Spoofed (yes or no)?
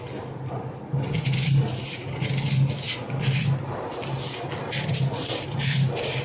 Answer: no